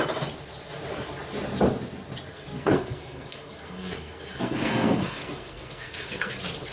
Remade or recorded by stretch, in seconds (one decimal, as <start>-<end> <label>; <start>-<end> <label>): 0.0-2.3 recorded; 2.3-6.3 remade; 6.3-6.7 recorded